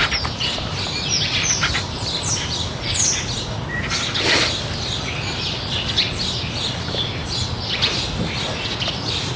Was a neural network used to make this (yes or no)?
no